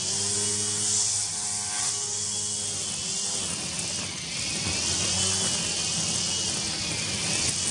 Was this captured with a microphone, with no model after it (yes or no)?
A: yes